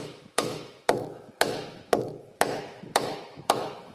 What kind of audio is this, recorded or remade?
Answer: remade